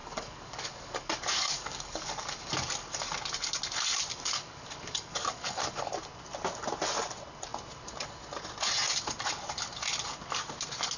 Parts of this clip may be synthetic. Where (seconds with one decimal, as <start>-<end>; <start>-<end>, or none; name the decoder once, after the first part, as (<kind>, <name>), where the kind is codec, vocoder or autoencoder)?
0.0-2.5 (codec, DAC); 4.1-5.9